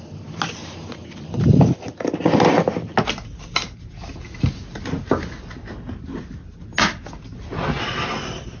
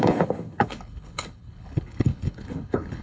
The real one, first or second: first